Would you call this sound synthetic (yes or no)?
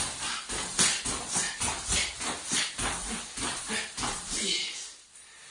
no